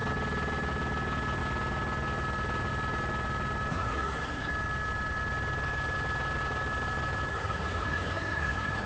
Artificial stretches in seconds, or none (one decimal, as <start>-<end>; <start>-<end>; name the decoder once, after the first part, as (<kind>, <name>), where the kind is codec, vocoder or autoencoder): 3.7-4.5 (codec, SNAC); 7.3-8.9